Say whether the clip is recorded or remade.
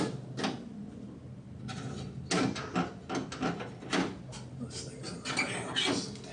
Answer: recorded